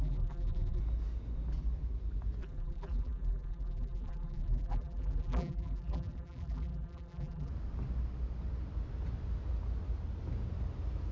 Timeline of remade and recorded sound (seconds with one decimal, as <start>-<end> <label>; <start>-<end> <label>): 0.0-0.8 remade; 0.8-2.4 recorded; 2.4-7.5 remade; 7.5-11.1 recorded